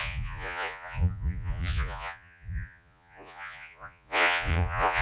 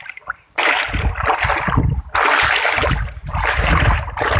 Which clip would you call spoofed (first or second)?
first